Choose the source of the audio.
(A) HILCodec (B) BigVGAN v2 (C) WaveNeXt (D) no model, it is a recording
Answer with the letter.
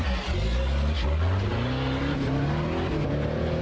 D